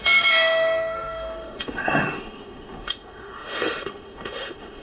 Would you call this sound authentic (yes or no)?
no